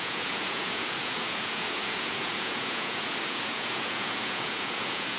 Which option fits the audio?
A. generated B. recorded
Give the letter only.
A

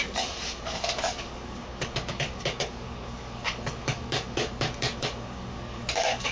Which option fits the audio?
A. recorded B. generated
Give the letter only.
B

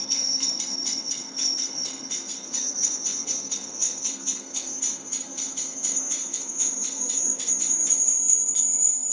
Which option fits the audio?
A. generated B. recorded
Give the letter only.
A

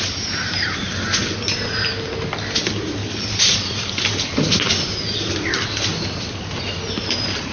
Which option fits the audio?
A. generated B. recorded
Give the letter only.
B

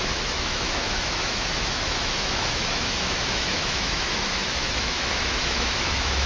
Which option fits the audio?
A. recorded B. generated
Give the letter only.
B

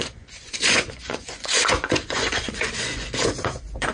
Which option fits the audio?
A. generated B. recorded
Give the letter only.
A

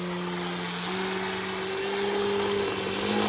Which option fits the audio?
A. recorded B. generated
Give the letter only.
A